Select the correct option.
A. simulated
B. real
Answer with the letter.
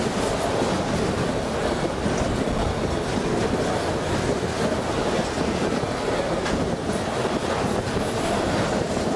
B